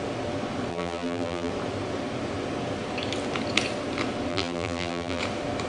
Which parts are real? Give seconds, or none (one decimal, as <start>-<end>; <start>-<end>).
0.0-0.7; 1.5-4.3; 5.2-5.7